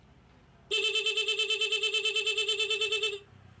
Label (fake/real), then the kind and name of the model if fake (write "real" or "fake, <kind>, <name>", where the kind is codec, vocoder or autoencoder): real